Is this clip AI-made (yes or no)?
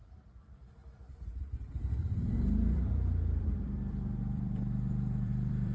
yes